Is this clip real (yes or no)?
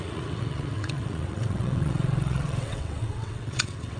no